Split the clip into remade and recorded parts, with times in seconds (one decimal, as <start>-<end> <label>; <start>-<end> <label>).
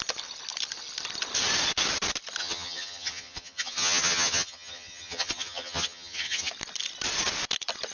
0.0-2.4 recorded; 2.4-6.5 remade; 6.5-7.9 recorded